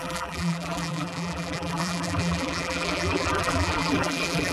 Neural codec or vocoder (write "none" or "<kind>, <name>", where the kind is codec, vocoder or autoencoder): vocoder, BigVGAN v2